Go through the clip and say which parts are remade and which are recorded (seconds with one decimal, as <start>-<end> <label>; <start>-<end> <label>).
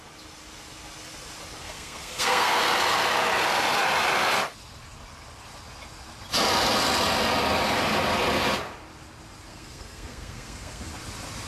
0.0-1.6 recorded; 1.6-2.6 remade; 2.6-9.5 recorded; 9.5-10.9 remade; 10.9-11.5 recorded